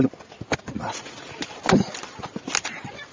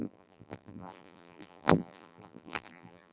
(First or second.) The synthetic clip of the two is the second